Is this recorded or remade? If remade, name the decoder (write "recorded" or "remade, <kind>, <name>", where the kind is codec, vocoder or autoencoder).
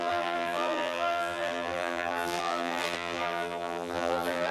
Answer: remade, vocoder, BigVGAN v2